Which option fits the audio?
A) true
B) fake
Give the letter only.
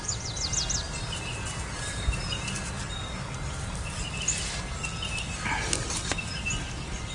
A